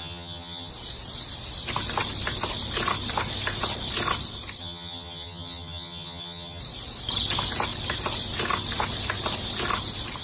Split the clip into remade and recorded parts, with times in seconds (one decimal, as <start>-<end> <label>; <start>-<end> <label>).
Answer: 0.0-0.7 remade; 0.7-4.6 recorded; 4.6-6.6 remade; 6.6-10.2 recorded